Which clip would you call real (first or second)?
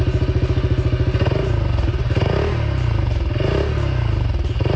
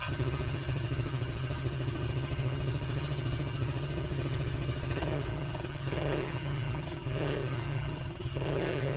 first